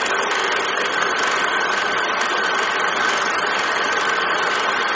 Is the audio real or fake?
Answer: real